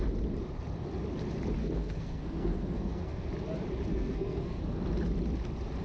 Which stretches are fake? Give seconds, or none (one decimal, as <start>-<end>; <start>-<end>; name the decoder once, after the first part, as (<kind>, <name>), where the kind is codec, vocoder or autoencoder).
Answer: 1.6-3.3 (codec, SNAC); 3.9-4.6